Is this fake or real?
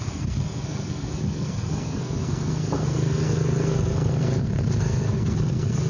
fake